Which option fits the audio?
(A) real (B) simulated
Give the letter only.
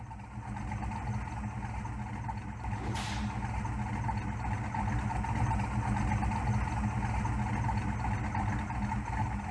A